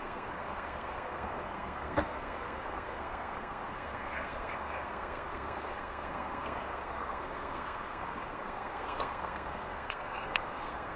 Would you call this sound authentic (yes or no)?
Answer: no